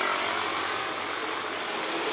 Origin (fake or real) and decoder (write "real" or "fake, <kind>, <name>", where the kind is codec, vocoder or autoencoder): real